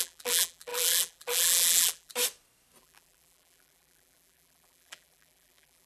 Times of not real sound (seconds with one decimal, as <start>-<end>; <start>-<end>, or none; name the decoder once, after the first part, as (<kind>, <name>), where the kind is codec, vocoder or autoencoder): 0.0-2.1 (vocoder, BigVGAN v2); 2.8-5.9